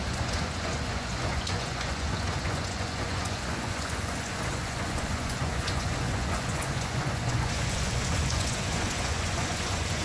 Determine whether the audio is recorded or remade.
remade